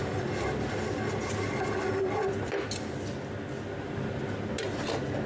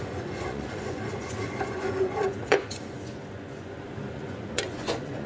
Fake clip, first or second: second